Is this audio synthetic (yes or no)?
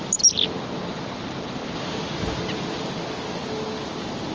no